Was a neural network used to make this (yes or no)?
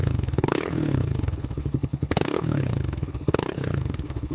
yes